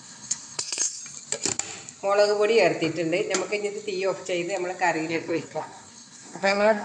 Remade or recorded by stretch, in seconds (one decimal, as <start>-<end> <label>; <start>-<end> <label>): 0.0-1.0 remade; 1.0-5.1 recorded; 5.1-6.8 remade